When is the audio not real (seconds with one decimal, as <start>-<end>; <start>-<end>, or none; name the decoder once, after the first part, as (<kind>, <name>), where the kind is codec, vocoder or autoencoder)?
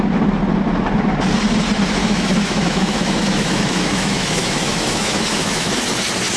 2.0-5.8 (autoencoder, DAC-VAE)